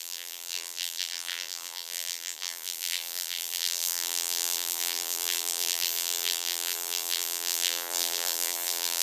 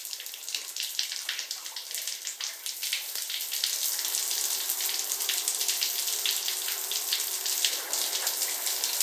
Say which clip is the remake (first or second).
first